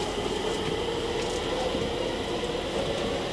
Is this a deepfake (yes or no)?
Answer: no